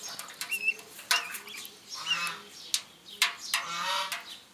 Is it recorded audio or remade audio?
recorded